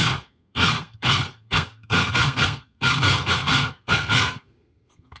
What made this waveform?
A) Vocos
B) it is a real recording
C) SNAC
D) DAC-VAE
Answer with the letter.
C